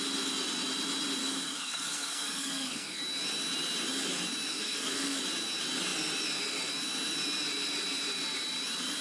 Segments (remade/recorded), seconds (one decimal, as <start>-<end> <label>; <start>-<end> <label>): 0.0-1.2 recorded; 1.2-3.0 remade; 3.0-4.5 recorded; 4.5-5.2 remade; 5.2-9.0 recorded